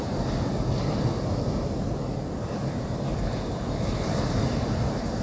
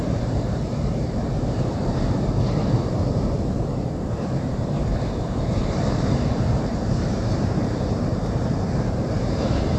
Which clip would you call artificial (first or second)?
second